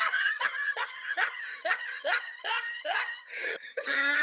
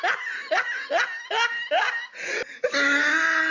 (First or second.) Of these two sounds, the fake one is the first